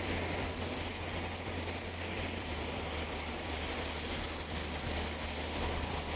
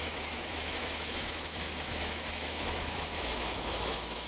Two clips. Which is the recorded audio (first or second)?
first